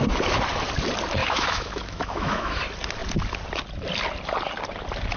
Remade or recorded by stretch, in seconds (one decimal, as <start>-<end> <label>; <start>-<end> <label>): 0.0-1.2 recorded; 1.2-2.6 remade; 2.6-5.2 recorded